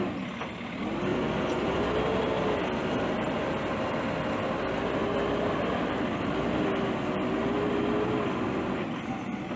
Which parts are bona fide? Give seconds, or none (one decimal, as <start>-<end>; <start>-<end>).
0.0-1.1; 1.9-9.6